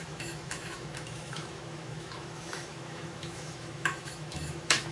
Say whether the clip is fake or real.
fake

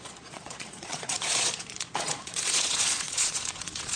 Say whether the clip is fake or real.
fake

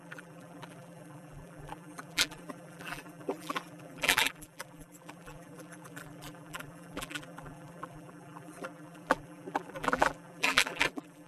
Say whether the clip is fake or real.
fake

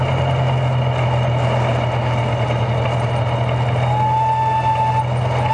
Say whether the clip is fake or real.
real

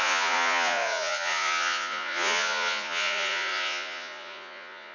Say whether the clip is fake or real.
fake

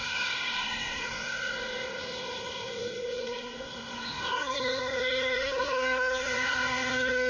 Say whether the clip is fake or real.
fake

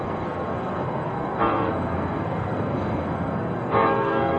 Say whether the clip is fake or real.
fake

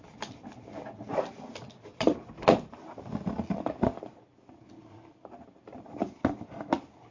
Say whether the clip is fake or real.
real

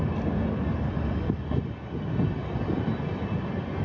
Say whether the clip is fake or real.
real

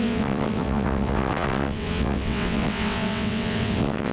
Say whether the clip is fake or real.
fake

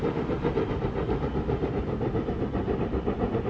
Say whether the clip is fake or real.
real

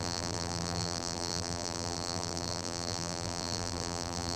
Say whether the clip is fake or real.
fake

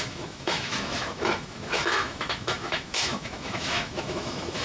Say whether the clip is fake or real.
fake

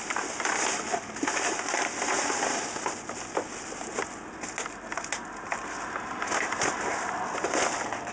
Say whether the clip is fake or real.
real